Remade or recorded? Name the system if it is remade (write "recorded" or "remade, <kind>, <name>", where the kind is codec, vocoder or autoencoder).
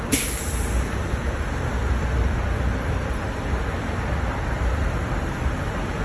remade, vocoder, BigVGAN v2